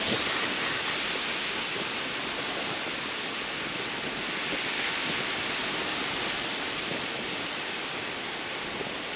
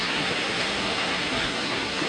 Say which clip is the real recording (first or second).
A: first